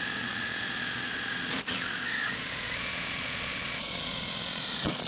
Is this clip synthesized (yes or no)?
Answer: yes